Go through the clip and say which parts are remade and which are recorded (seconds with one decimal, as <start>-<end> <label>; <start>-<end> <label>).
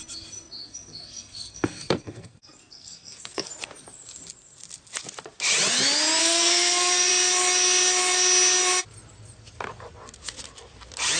0.0-0.6 recorded; 0.6-3.5 remade; 3.5-6.2 recorded; 6.2-7.1 remade; 7.1-11.2 recorded